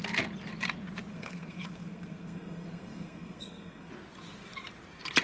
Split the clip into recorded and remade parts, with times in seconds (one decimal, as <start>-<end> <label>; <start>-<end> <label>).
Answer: 0.0-1.1 recorded; 1.1-3.9 remade; 3.9-5.2 recorded